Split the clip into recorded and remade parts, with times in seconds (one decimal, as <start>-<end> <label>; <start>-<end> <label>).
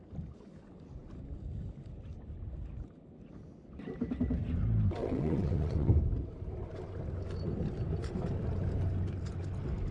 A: 0.0-5.0 recorded; 5.0-5.9 remade; 5.9-9.9 recorded